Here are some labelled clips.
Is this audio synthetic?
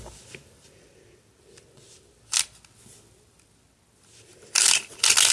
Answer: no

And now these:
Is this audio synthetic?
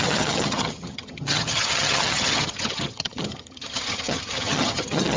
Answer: yes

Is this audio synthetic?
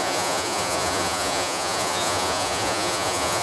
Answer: yes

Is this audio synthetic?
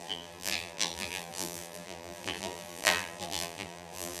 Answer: yes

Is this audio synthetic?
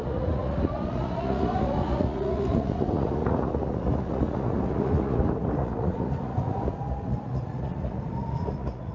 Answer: yes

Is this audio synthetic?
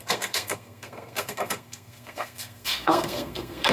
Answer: yes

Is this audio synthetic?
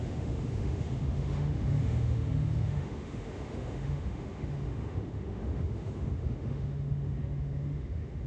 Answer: yes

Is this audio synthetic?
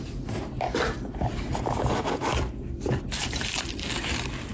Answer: no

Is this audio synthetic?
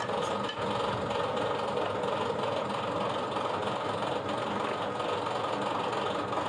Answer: no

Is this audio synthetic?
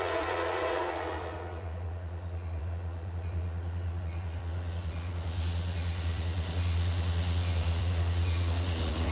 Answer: yes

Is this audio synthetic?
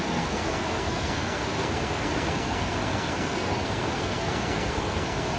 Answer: yes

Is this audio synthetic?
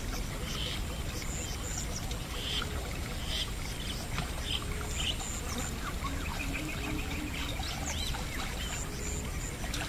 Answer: no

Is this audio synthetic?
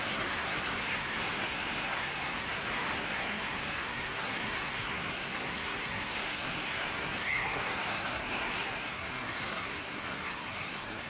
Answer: yes